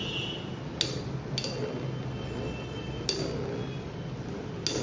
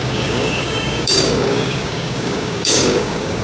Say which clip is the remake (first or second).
second